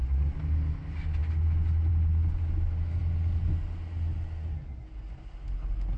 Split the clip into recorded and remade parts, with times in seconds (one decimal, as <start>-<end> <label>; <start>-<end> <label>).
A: 0.0-6.0 recorded